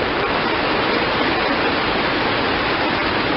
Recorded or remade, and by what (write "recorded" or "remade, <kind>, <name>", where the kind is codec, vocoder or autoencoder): recorded